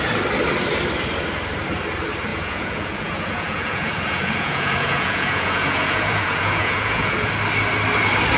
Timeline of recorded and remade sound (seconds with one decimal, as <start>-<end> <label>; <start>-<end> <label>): 0.0-2.3 recorded; 2.3-7.3 remade; 7.3-8.4 recorded

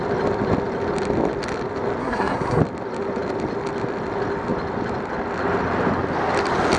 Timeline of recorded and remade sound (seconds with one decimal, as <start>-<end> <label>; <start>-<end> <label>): 0.0-2.0 recorded; 2.0-2.6 remade; 2.6-6.8 recorded

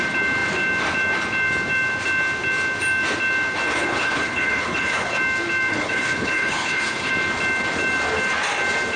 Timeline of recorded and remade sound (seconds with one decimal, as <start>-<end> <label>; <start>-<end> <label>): 0.0-3.7 recorded; 3.7-5.2 remade; 5.2-5.7 recorded; 5.7-7.1 remade; 7.1-9.0 recorded